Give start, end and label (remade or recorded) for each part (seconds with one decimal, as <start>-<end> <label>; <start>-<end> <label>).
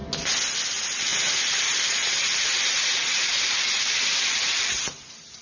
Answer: 0.0-0.7 recorded; 0.7-5.4 remade